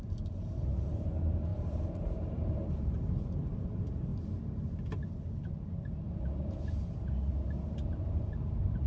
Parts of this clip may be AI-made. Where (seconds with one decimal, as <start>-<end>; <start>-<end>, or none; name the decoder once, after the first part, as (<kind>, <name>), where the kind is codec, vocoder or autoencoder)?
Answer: 0.0-4.1 (vocoder, BigVGAN v2); 6.0-8.9